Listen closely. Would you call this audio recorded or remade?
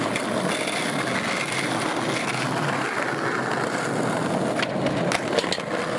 recorded